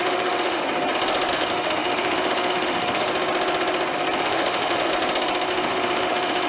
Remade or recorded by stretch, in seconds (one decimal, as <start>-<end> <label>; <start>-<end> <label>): 0.0-0.6 remade; 0.6-1.3 recorded; 1.3-3.1 remade; 3.1-4.2 recorded; 4.2-4.9 remade; 4.9-5.5 recorded; 5.5-6.5 remade